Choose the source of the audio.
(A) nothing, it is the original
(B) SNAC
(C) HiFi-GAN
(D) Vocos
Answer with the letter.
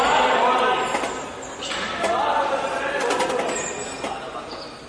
A